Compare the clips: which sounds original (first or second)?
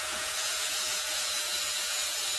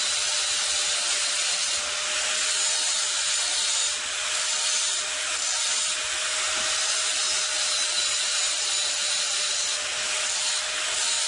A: second